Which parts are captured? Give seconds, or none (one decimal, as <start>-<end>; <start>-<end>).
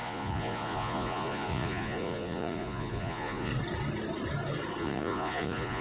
3.5-4.8